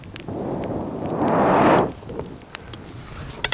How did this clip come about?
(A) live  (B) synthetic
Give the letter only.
A